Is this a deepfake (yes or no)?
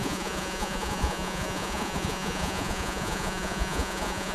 yes